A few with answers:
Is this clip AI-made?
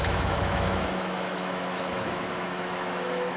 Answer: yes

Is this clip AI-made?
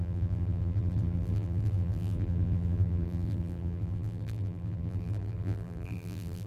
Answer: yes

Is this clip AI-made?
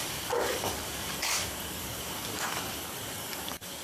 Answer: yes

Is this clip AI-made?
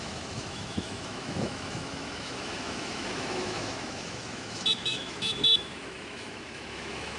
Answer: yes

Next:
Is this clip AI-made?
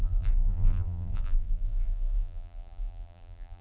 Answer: yes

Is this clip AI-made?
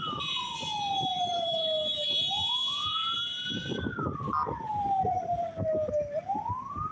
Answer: no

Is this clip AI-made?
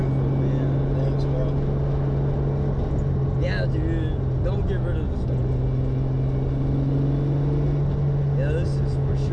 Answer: no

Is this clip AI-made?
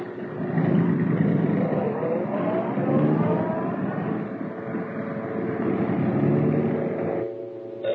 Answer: no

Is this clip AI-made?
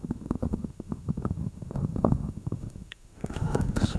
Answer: yes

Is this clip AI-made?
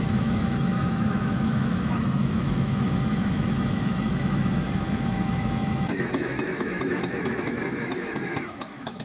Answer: yes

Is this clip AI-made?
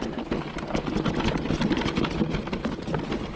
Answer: no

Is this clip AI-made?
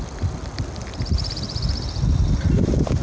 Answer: no